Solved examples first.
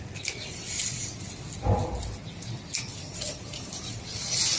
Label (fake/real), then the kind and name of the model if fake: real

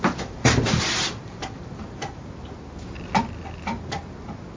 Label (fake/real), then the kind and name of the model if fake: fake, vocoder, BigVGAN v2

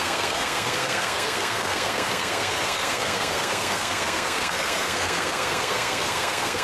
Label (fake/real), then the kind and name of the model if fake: fake, codec, SNAC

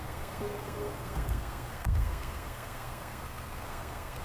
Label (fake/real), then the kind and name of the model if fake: fake, codec, SNAC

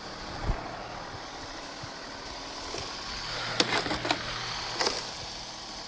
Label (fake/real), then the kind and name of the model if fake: real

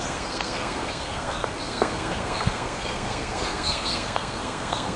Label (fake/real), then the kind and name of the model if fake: fake, codec, SNAC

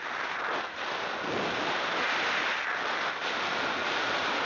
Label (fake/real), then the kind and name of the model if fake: real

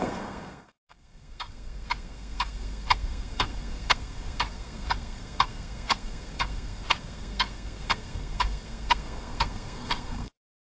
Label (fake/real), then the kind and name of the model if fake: fake, codec, SNAC